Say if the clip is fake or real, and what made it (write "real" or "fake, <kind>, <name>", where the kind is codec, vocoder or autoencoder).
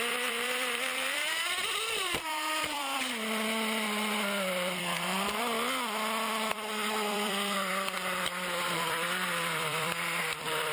fake, vocoder, BigVGAN v2